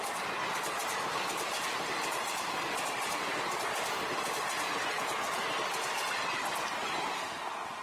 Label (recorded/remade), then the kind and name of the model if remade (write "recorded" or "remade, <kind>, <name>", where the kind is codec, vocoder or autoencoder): recorded